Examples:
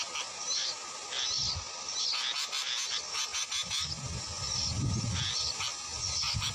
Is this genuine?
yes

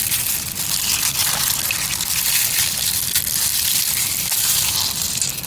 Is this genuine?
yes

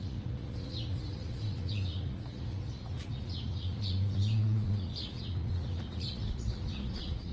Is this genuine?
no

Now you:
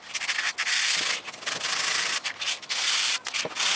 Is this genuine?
yes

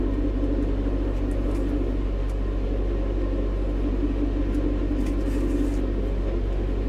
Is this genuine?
yes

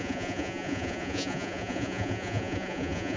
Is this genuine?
no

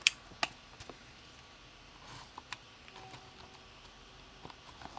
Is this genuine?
yes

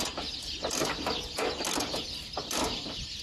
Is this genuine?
yes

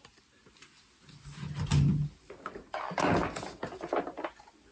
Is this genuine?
yes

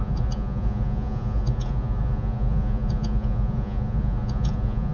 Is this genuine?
no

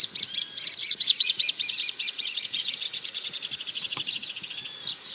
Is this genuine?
no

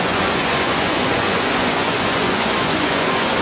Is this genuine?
no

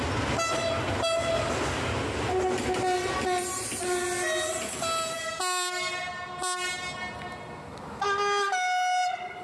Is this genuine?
yes